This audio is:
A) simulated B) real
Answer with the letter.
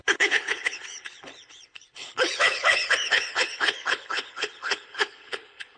A